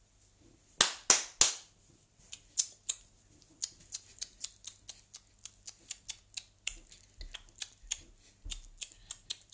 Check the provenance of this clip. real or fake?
real